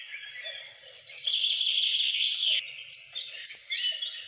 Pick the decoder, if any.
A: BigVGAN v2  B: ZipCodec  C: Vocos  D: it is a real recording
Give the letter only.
D